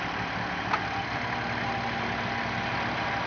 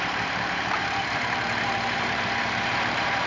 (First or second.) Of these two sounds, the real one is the first